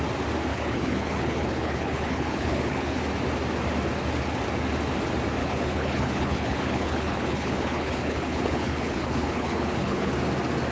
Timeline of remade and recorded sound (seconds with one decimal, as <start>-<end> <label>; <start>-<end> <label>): 0.0-0.5 recorded; 0.5-3.0 remade; 3.0-5.4 recorded; 5.4-10.1 remade; 10.1-10.7 recorded